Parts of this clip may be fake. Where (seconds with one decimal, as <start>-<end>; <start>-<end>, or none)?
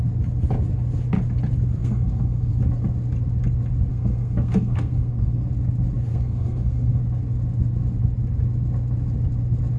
1.8-2.6; 3.9-5.5; 6.1-7.0